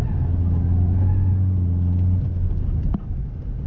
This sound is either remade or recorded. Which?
recorded